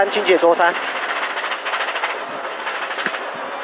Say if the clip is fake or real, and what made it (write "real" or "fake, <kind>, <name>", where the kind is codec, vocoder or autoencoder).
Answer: real